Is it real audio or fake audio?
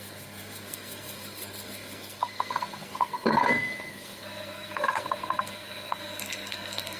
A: fake